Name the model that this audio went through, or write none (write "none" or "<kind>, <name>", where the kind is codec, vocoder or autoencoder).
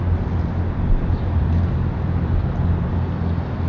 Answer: none